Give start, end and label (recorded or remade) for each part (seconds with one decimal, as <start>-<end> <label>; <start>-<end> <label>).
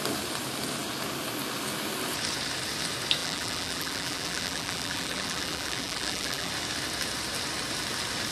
0.0-3.2 recorded; 3.2-6.5 remade; 6.5-8.3 recorded